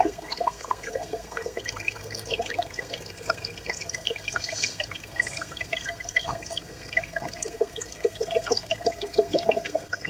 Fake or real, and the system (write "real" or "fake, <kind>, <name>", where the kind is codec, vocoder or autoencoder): fake, codec, SNAC